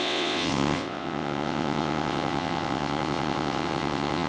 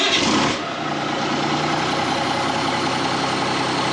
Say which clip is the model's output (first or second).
first